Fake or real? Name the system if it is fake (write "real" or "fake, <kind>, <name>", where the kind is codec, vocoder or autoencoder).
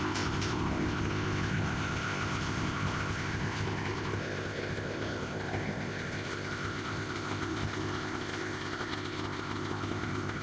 fake, codec, ZipCodec